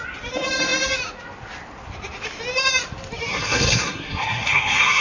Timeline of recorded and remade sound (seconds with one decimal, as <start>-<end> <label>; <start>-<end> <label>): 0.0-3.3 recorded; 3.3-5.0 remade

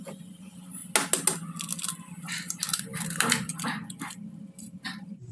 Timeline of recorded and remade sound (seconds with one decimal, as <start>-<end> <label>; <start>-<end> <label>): 0.0-0.8 remade; 0.8-2.1 recorded; 2.1-5.3 remade

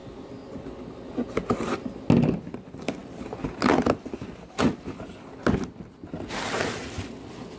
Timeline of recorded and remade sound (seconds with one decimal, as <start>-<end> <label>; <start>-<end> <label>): 0.0-7.6 recorded

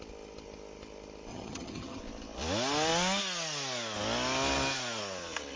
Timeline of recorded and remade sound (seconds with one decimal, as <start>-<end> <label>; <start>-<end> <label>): 0.0-1.3 recorded; 1.3-2.0 remade; 2.0-5.6 recorded